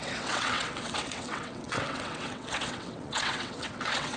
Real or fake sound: fake